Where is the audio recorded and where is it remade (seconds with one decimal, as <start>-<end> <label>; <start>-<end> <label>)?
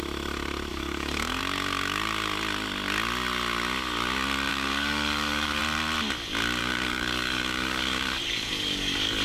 0.0-0.7 recorded; 0.7-1.4 remade; 1.4-4.5 recorded; 4.5-5.6 remade; 5.6-6.6 recorded; 6.6-9.2 remade